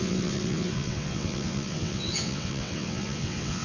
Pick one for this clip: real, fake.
fake